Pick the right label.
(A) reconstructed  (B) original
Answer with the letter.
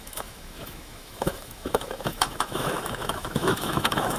A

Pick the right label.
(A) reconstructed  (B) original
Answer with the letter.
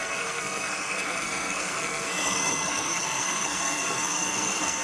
A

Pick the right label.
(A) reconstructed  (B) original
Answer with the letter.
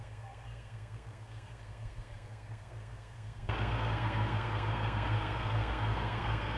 A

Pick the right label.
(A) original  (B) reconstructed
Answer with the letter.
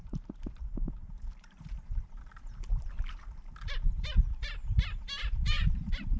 B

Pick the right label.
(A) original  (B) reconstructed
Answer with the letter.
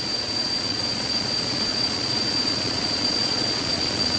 B